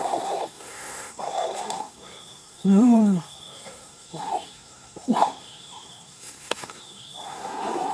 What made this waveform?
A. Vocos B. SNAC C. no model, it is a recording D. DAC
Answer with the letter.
B